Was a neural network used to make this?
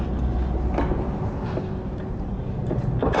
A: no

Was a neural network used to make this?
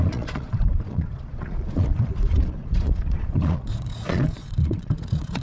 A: yes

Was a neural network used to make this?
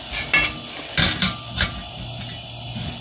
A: no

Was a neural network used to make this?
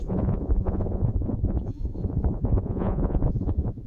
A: yes